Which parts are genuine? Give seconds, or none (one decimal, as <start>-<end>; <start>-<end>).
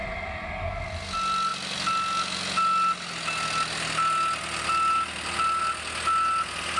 0.0-6.8